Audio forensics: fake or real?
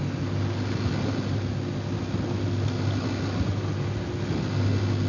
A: real